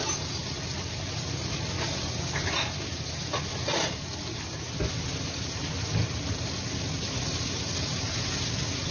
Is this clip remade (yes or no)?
no